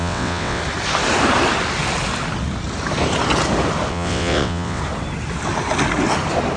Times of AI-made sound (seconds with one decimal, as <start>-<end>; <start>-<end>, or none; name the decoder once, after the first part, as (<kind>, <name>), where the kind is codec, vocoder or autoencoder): 0.0-0.6 (vocoder, WaveNeXt); 3.9-4.8